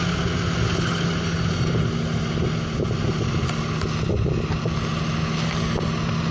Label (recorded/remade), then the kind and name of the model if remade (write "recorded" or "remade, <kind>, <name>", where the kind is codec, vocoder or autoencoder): recorded